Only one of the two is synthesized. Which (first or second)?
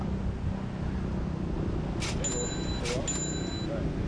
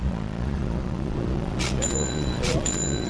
second